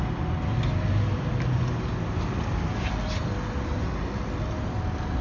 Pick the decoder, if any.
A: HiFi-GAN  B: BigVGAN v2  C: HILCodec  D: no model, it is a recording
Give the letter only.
D